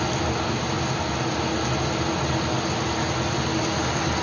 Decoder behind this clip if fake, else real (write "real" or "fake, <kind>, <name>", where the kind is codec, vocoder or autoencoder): real